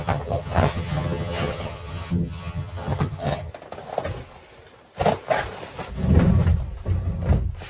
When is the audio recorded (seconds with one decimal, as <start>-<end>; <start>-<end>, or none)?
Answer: 3.5-7.7